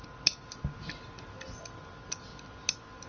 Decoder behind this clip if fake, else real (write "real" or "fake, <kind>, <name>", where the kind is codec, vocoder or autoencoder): real